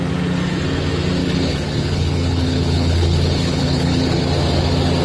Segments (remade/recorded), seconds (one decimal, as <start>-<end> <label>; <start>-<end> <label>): 0.0-1.2 recorded; 1.2-4.2 remade; 4.2-5.0 recorded